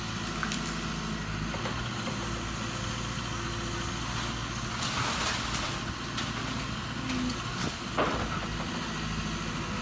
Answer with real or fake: real